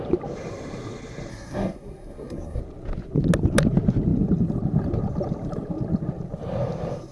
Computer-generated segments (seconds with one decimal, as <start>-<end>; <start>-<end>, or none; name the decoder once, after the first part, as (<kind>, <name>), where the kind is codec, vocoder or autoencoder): 1.3-2.6 (codec, SNAC)